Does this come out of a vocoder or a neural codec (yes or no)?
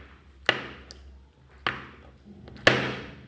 no